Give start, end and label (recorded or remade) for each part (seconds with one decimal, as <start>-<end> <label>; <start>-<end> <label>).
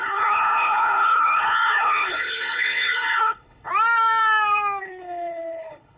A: 0.0-3.7 remade; 3.7-4.8 recorded; 4.8-6.0 remade